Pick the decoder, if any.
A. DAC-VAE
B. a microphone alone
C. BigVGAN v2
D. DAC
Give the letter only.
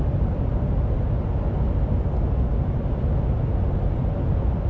B